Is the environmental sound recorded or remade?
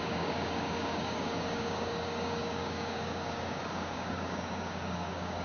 remade